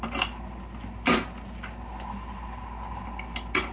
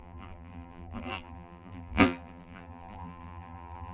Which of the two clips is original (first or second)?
first